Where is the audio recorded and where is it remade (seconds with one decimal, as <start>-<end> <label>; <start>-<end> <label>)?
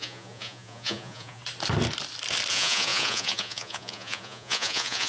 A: 0.0-1.4 remade; 1.4-2.5 recorded; 2.5-5.1 remade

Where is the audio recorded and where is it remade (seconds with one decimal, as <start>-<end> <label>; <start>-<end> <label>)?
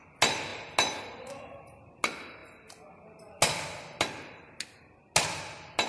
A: 0.0-5.9 recorded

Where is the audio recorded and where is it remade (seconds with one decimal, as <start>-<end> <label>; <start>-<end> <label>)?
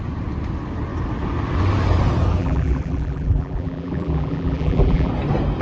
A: 0.0-2.4 recorded; 2.4-5.1 remade; 5.1-5.6 recorded